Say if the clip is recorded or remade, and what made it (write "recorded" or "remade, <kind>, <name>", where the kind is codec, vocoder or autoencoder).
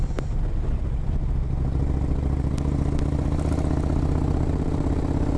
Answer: recorded